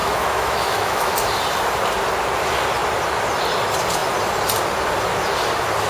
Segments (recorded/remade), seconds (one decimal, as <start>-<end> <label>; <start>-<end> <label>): 0.0-1.1 remade; 1.1-5.9 recorded